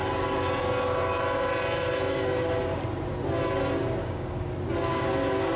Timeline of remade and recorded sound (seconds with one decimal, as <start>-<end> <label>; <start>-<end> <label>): 0.0-4.0 recorded; 4.0-4.5 remade; 4.5-5.6 recorded